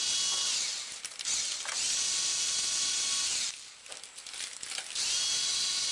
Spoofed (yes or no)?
no